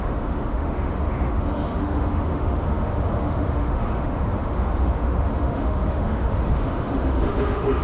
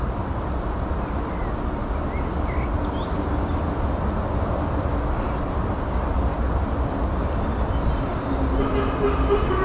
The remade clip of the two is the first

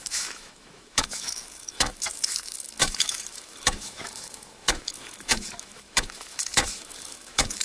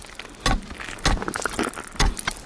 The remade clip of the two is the first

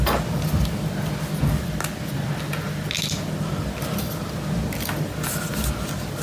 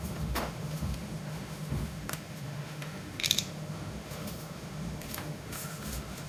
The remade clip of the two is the second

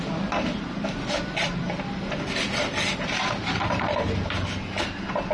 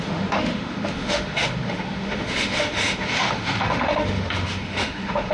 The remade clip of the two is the second